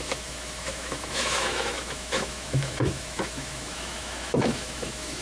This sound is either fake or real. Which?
fake